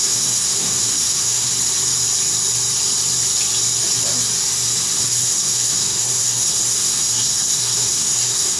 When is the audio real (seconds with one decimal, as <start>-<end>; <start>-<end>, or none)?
1.5-5.0